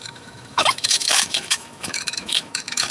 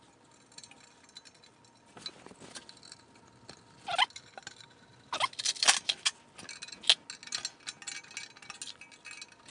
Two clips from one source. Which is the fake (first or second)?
first